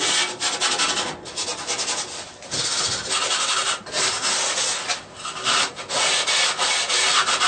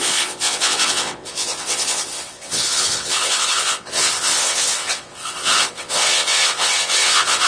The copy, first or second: second